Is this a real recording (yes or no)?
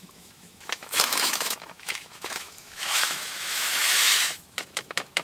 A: no